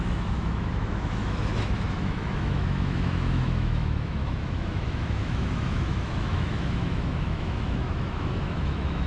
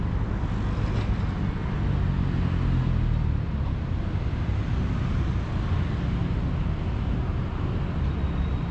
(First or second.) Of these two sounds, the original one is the second